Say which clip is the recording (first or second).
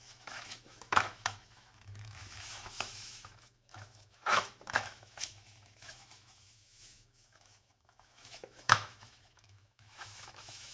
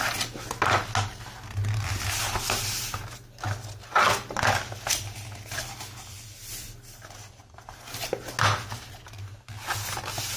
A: second